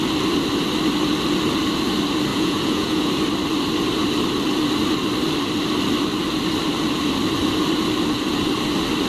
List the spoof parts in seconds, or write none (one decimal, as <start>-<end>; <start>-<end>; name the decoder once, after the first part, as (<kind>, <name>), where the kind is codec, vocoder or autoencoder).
2.3-3.1 (vocoder, Vocos)